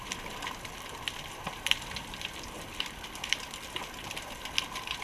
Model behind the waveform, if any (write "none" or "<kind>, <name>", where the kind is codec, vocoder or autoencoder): vocoder, BigVGAN v2